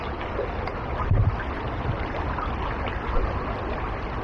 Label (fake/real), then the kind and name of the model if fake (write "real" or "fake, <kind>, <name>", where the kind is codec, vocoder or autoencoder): real